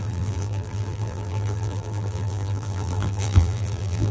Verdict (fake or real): fake